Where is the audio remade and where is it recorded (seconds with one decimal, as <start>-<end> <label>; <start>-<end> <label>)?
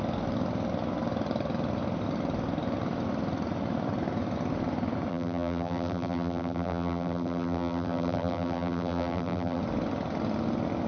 0.0-5.1 recorded; 5.1-9.6 remade; 9.6-10.9 recorded